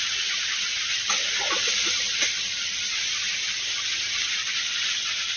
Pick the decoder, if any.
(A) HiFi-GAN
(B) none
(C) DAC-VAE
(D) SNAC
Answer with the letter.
B